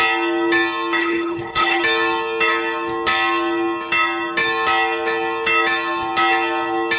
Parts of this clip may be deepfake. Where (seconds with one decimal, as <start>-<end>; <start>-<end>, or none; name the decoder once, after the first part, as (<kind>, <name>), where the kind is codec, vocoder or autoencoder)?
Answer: 1.0-1.8 (codec, HILCodec)